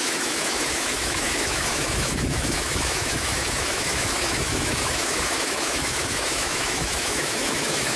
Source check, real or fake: fake